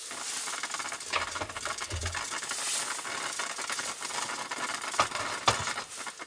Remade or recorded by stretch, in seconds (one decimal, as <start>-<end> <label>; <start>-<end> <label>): 0.0-6.3 recorded